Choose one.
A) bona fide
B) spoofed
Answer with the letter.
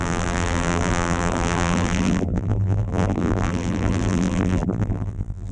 B